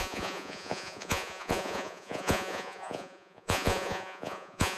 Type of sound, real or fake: fake